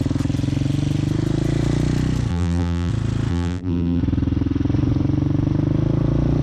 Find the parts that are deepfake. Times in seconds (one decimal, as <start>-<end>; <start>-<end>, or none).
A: 2.3-2.9; 3.3-4.0